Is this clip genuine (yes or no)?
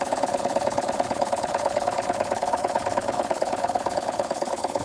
no